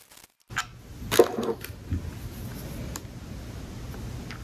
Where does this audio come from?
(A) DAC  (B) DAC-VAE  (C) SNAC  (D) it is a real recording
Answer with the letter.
D